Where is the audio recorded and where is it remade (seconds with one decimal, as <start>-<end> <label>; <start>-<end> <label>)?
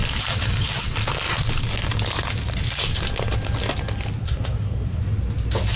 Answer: 0.0-4.2 recorded; 4.2-5.0 remade; 5.0-5.8 recorded